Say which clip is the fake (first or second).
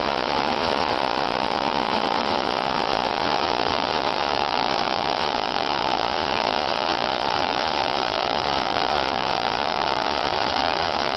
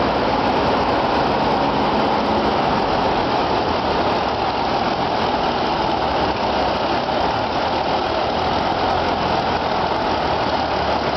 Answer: first